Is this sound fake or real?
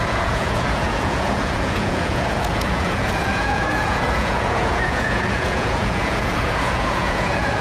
fake